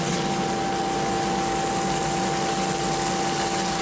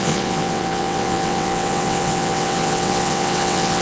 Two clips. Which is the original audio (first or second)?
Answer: first